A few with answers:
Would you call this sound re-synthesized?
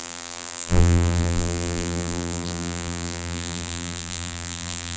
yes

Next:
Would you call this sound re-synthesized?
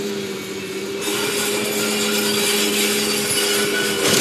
no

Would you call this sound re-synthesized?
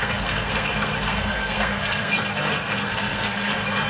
yes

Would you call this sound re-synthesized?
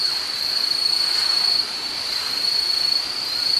no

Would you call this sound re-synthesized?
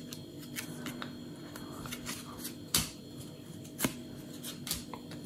no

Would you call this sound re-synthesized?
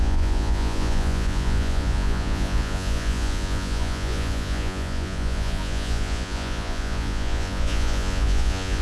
yes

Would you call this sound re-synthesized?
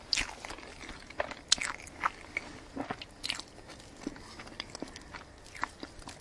no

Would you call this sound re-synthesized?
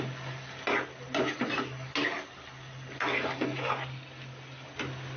no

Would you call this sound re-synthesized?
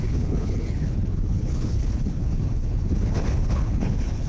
yes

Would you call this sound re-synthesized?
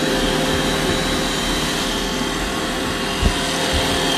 no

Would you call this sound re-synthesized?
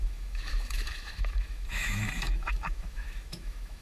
yes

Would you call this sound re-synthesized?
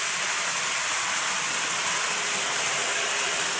no